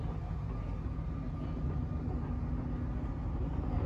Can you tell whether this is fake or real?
real